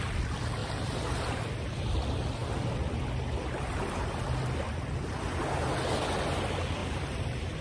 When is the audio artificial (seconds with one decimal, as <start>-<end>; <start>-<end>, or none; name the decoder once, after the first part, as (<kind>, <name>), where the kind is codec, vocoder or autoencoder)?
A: 0.6-1.2 (vocoder, BigVGAN v2); 6.8-7.6